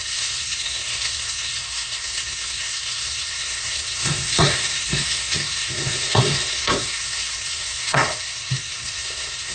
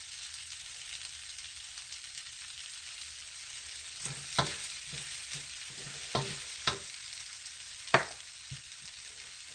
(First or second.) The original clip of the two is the second